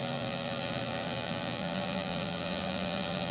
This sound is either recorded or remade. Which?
remade